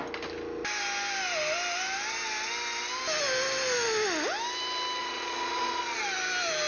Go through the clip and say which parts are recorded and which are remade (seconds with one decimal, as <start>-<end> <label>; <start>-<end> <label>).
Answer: 0.0-5.0 recorded; 5.0-6.0 remade; 6.0-6.7 recorded